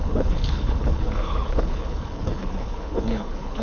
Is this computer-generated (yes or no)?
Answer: yes